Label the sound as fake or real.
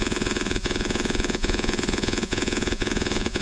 fake